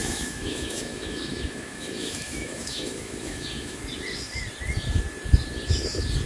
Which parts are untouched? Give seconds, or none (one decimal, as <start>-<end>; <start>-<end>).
3.8-6.3